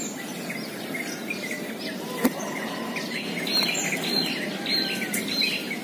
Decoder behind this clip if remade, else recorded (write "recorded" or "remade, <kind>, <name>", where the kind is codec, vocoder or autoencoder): recorded